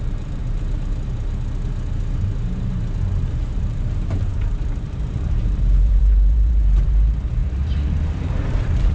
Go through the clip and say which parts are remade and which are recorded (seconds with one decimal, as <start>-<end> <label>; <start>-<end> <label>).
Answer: 0.0-0.4 remade; 0.4-3.3 recorded; 3.3-8.9 remade